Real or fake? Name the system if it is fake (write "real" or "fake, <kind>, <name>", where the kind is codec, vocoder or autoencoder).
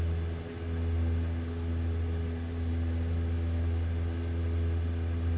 real